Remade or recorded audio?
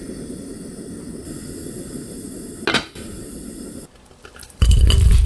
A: recorded